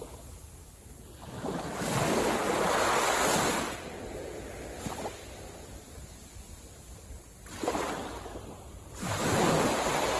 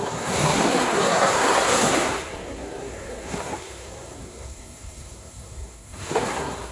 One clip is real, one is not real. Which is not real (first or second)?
second